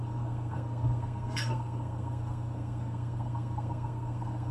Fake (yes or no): yes